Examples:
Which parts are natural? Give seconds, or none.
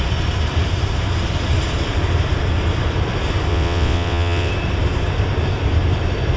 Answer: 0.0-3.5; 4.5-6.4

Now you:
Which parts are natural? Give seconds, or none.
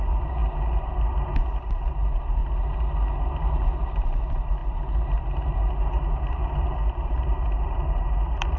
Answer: 2.4-3.5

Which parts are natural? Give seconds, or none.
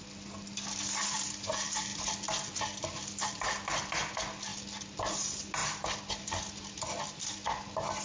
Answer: 0.0-8.0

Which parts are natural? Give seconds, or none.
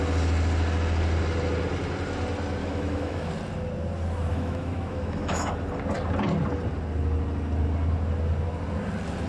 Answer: 0.0-2.6; 3.3-4.3; 5.5-9.3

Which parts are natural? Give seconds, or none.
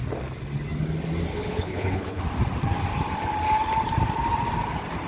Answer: 0.0-1.3; 2.2-5.1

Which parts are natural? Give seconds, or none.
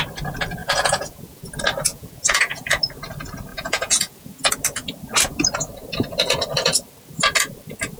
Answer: 0.0-0.6; 1.5-1.9; 2.8-3.5; 4.5-8.0